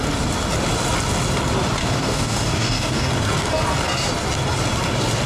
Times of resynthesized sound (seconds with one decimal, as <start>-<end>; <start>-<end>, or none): 1.8-3.1